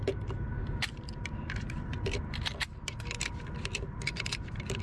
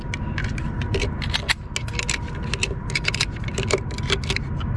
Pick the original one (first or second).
second